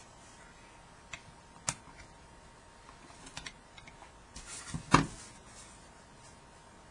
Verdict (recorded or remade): recorded